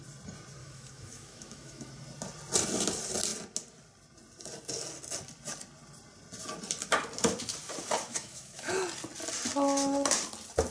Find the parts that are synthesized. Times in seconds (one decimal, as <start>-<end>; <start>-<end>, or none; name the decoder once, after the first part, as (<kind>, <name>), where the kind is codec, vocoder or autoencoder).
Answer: 0.6-1.9 (autoencoder, DAC-VAE); 8.1-8.7